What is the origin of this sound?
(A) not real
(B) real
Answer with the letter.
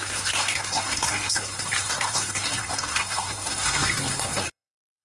A